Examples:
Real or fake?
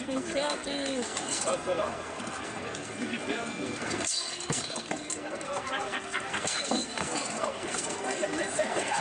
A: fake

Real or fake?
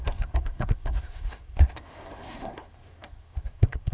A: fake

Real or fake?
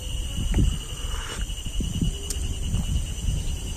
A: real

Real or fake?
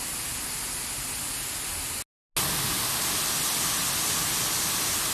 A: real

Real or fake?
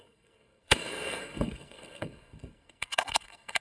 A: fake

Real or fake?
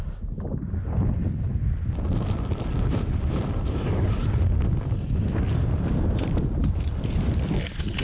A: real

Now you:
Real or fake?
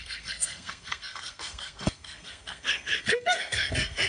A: fake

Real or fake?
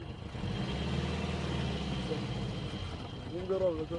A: real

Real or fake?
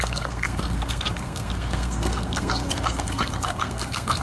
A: fake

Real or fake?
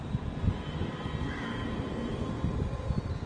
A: real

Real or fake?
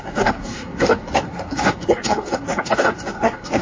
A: fake